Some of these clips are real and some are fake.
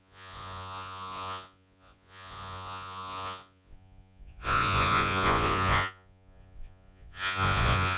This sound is fake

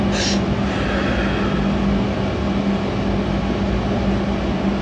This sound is real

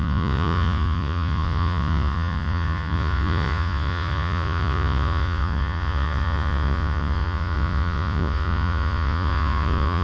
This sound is fake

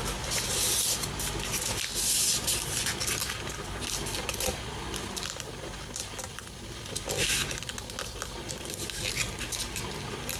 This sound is real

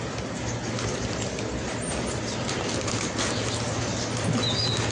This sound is real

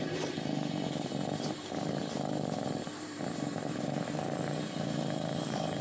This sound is fake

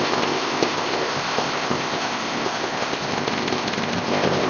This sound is fake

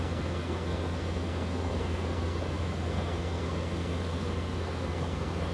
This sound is fake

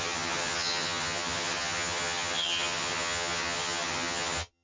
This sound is fake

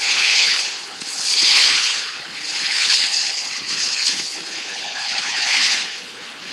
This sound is fake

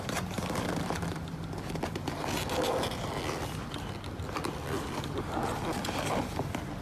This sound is real